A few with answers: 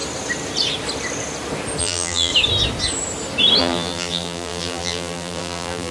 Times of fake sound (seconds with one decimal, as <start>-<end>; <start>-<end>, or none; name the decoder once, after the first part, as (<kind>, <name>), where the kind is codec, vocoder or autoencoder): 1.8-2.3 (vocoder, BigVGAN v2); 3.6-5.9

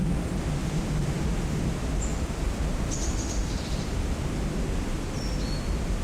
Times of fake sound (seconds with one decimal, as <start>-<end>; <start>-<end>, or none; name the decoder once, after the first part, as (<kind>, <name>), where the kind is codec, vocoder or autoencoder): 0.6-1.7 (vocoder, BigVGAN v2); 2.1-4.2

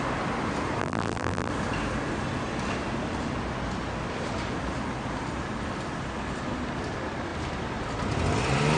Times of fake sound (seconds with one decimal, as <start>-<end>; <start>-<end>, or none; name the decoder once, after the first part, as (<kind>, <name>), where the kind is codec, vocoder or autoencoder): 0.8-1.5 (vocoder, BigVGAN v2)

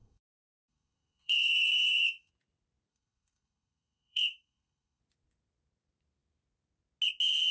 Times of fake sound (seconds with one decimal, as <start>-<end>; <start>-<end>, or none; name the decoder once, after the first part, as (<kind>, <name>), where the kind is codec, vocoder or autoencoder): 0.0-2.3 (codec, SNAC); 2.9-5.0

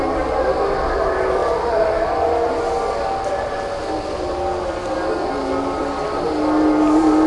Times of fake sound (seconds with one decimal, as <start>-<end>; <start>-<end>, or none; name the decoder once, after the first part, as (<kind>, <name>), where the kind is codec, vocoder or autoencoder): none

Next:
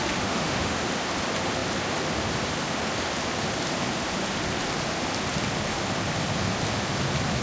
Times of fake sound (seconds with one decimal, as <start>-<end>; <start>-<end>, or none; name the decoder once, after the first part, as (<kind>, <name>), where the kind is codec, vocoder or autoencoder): 0.0-0.8 (autoencoder, DAC-VAE)

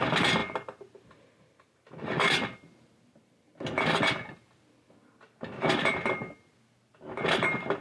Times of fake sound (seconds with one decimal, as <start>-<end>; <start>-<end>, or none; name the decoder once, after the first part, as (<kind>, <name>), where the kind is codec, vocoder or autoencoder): none

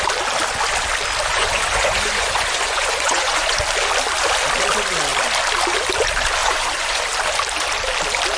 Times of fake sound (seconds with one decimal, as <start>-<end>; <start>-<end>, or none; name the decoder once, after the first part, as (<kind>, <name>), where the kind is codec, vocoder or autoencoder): 1.3-3.6 (vocoder, Vocos); 6.4-7.0